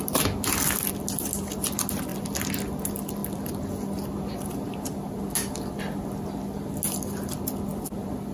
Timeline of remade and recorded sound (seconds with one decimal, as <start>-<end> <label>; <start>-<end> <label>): 0.0-8.3 recorded